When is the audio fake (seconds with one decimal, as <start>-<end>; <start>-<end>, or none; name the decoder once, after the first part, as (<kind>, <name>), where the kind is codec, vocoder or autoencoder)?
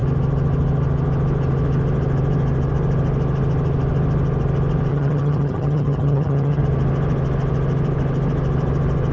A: 4.9-6.6 (vocoder, HiFi-GAN)